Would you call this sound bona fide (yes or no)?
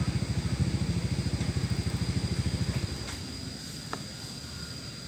yes